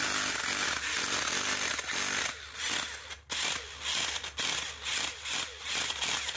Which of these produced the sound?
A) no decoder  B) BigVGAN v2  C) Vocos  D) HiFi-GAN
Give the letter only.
A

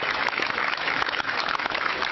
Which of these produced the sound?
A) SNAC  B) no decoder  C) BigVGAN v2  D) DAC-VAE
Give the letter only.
D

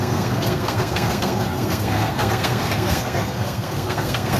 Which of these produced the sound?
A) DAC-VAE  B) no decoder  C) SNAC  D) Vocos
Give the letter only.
C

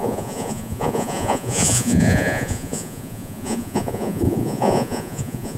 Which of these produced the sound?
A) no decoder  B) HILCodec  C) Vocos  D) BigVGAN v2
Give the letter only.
C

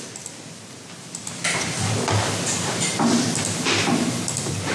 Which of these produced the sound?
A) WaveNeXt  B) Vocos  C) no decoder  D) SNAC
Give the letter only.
C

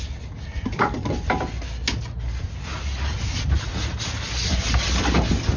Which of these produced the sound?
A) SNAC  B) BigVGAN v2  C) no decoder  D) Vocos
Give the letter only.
C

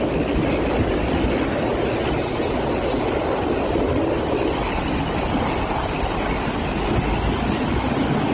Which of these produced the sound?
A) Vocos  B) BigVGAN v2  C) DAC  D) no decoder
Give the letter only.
D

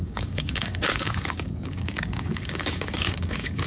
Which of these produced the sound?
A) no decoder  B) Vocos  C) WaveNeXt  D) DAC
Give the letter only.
D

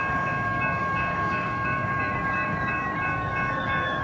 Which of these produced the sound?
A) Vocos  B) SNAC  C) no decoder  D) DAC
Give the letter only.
D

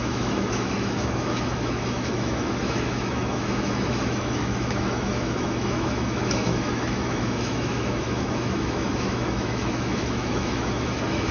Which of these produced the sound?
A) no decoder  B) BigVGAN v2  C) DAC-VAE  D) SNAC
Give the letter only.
C